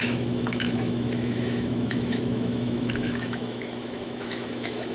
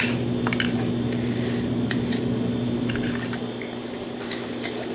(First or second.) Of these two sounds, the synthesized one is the first